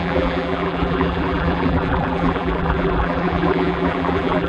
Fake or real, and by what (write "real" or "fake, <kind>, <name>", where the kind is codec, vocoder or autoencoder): fake, vocoder, BigVGAN v2